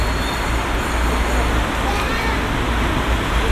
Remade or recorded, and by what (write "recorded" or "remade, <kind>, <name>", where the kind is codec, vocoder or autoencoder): recorded